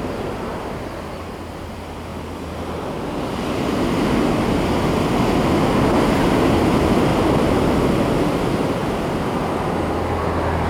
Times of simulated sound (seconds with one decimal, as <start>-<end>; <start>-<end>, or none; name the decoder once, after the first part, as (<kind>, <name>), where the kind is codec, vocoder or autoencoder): 7.1-7.8 (vocoder, BigVGAN v2)